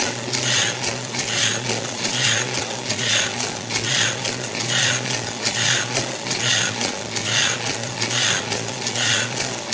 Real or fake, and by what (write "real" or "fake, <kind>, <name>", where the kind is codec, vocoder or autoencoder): fake, vocoder, Vocos